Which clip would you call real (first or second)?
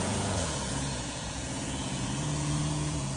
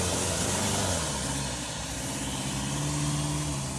second